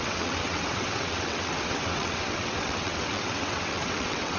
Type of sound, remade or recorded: remade